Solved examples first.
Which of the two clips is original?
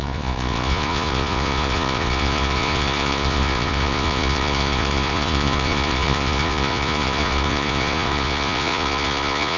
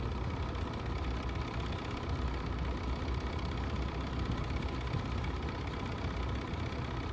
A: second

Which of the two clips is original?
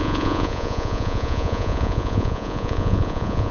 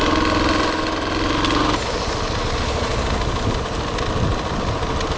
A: second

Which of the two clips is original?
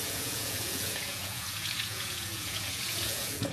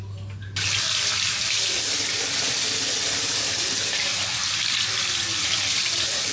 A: second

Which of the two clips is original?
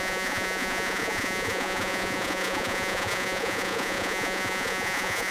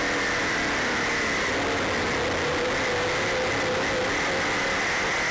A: second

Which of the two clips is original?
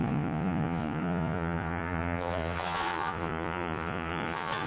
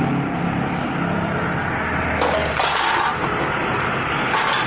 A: second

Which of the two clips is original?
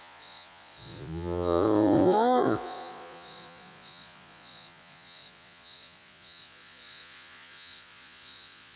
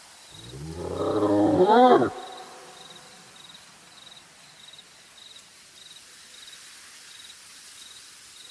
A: second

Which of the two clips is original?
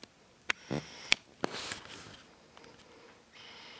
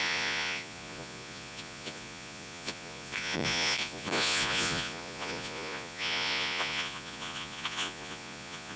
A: first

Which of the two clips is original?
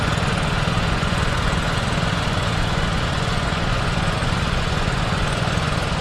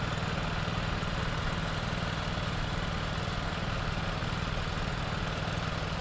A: second